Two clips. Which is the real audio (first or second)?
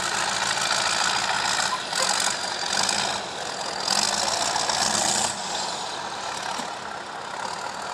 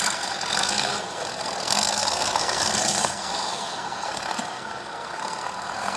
first